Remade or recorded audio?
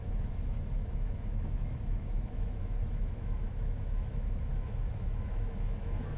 remade